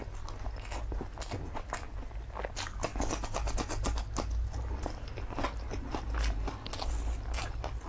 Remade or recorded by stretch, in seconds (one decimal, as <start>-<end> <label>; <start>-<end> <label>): 0.0-7.9 recorded